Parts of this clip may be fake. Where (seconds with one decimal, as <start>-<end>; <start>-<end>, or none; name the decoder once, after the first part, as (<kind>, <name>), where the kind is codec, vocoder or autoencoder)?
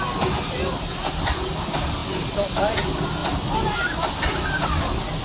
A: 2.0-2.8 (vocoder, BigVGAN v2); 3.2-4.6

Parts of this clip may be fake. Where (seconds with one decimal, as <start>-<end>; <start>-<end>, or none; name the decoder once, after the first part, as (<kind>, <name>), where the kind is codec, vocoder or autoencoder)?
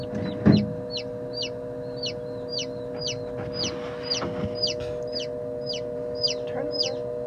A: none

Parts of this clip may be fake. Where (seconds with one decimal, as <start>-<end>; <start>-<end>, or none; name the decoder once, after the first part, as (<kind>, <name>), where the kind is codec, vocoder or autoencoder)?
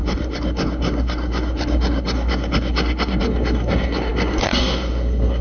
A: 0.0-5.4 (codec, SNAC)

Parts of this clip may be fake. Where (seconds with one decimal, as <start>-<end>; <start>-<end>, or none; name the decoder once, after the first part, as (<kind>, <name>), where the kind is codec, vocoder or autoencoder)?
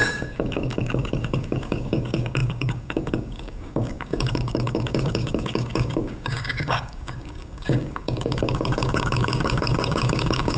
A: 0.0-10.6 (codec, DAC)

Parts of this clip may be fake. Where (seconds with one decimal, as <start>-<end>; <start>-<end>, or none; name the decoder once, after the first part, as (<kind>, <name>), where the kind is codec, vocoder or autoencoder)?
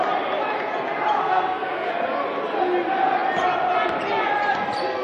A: 1.2-1.9 (codec, SNAC)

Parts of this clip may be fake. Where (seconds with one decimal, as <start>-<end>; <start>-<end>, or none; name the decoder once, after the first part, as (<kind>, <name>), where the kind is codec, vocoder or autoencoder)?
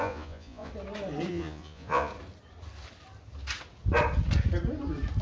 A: 0.0-0.7 (vocoder, Vocos); 1.3-2.1